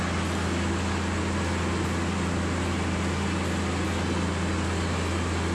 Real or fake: real